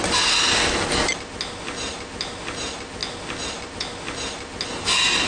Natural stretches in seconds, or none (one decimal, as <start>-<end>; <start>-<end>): 0.0-5.3